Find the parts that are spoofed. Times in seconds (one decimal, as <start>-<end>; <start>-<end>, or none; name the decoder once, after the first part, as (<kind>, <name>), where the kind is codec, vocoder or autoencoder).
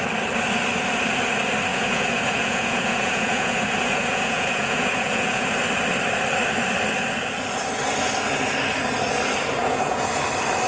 1.7-5.5 (vocoder, Vocos); 9.6-10.2